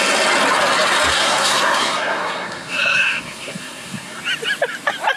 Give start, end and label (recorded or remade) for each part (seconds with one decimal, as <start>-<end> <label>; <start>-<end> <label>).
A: 0.0-1.1 recorded; 1.1-4.2 remade; 4.2-5.2 recorded